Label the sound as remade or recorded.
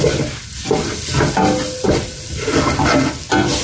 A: recorded